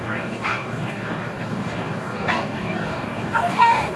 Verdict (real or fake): fake